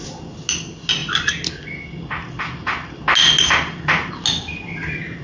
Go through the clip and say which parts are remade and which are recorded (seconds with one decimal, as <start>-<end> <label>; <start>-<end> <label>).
0.0-5.2 recorded